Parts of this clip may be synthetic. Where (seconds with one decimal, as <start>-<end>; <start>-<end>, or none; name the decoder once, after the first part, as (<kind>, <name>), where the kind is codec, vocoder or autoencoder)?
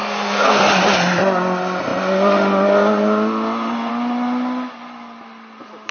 0.0-0.6 (codec, SNAC)